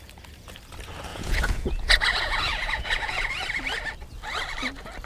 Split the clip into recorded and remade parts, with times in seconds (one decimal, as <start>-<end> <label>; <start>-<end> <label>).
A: 0.0-1.1 recorded; 1.1-3.3 remade; 3.3-5.1 recorded